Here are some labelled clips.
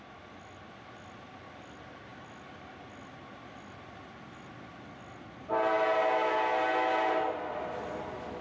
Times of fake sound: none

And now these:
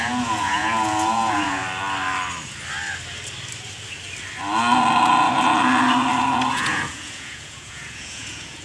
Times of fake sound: 0.0-1.6 (vocoder, Vocos); 6.5-8.6

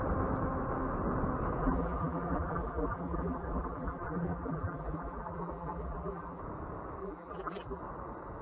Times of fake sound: 1.6-6.4 (vocoder, BigVGAN v2); 7.0-7.8

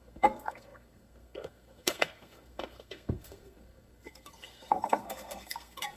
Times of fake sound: 0.0-6.0 (codec, SNAC)

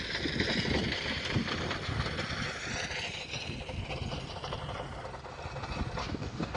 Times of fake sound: 6.0-6.6 (codec, DAC)

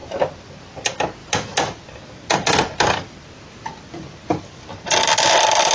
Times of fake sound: none